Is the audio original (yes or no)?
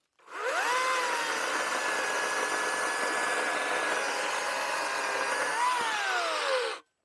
yes